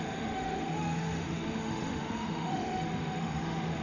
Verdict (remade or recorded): remade